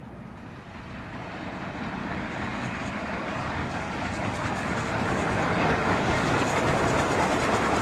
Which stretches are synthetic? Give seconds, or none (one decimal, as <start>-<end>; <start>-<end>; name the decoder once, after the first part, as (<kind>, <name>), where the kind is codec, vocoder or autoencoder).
2.0-6.6 (codec, DAC)